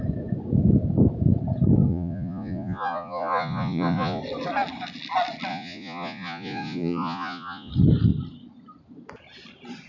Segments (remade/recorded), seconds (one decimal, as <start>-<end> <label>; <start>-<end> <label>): 0.0-1.9 recorded; 1.9-4.2 remade; 4.2-5.5 recorded; 5.5-7.7 remade; 7.7-9.9 recorded